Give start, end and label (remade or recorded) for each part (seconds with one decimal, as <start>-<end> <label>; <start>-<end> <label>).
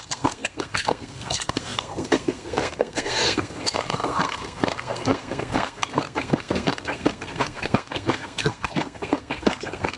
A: 0.0-10.0 remade